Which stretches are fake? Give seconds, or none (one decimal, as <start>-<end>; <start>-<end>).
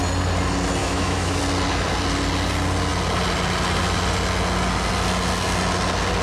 0.8-1.4